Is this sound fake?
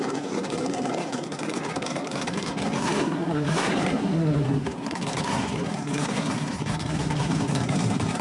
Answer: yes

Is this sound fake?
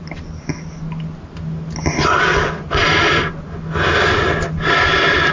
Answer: no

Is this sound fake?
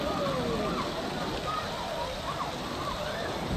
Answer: no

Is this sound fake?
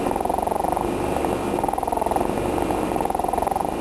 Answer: no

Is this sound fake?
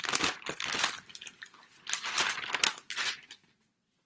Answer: no